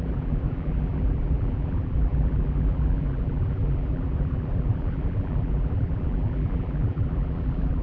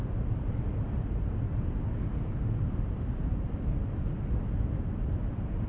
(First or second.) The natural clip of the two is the second